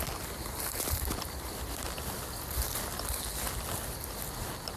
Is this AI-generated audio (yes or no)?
no